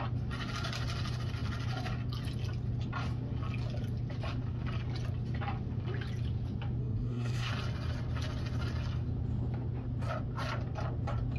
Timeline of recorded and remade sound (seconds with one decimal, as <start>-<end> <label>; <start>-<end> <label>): 0.0-6.8 recorded; 6.8-7.5 remade; 7.5-11.4 recorded